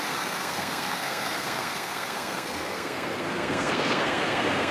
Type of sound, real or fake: fake